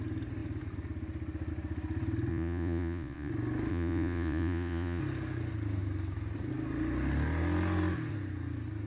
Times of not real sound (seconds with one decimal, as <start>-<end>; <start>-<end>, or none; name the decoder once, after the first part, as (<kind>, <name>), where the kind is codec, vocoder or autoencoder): 2.3-3.3 (vocoder, Vocos); 3.7-5.0